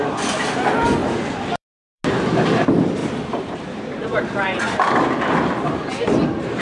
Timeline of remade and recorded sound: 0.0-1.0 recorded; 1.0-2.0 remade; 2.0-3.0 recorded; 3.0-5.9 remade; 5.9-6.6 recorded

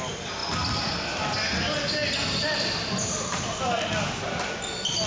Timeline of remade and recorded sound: 0.0-5.1 recorded

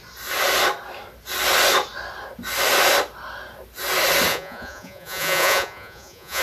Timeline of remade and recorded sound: 0.0-4.3 recorded; 4.3-6.4 remade

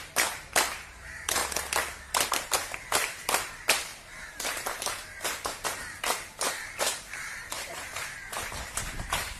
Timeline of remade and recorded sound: 0.0-1.4 remade; 1.4-2.3 recorded; 2.3-9.4 remade